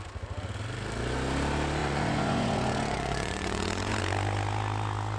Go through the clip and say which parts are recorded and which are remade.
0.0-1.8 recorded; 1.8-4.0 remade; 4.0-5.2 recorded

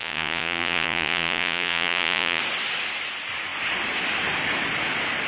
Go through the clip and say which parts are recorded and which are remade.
0.0-2.4 remade; 2.4-5.3 recorded

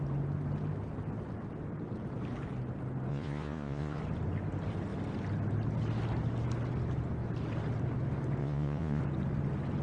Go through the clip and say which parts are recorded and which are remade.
0.0-3.1 recorded; 3.1-4.0 remade; 4.0-8.4 recorded; 8.4-9.0 remade; 9.0-9.8 recorded

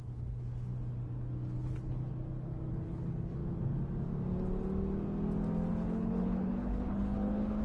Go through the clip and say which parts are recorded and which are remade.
0.0-0.7 remade; 0.7-1.6 recorded; 1.6-2.1 remade; 2.1-2.7 recorded; 2.7-3.4 remade; 3.4-5.7 recorded; 5.7-7.6 remade

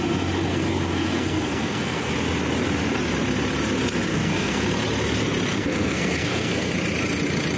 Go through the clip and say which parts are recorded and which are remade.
0.0-0.5 recorded; 0.5-2.1 remade; 2.1-4.1 recorded; 4.1-4.7 remade; 4.7-5.5 recorded; 5.5-6.7 remade; 6.7-7.6 recorded

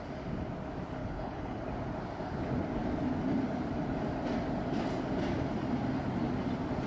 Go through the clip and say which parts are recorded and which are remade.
0.0-1.0 recorded; 1.0-1.6 remade; 1.6-6.9 recorded

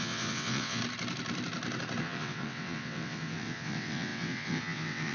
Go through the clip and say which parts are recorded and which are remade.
0.0-0.8 remade; 0.8-2.0 recorded; 2.0-5.1 remade